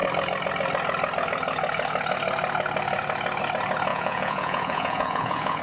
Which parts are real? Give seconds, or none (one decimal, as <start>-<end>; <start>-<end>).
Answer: 0.0-3.9